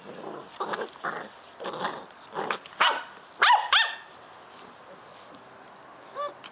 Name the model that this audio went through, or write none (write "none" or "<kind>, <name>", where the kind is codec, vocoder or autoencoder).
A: none